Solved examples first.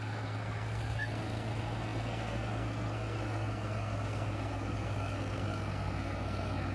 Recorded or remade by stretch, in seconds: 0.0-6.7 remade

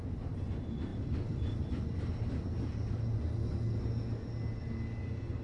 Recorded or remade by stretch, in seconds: 0.0-0.9 recorded; 0.9-1.8 remade; 1.8-5.4 recorded

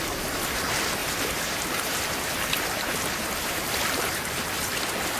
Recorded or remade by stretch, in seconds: 0.0-1.0 recorded; 1.0-4.1 remade; 4.1-5.2 recorded

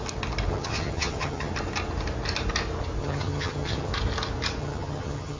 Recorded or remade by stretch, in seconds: 0.0-0.5 recorded; 0.5-1.5 remade; 1.5-3.0 recorded; 3.0-3.9 remade; 3.9-4.6 recorded; 4.6-5.4 remade